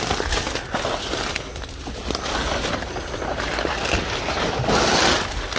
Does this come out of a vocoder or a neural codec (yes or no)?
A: no